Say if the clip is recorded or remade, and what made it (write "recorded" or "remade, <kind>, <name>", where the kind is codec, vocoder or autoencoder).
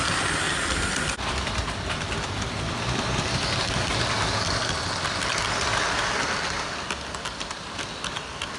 recorded